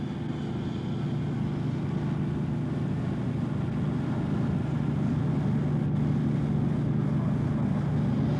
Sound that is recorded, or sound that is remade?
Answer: recorded